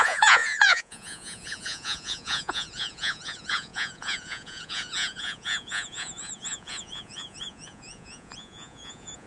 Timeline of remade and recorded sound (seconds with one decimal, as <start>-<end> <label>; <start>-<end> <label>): 0.0-9.3 remade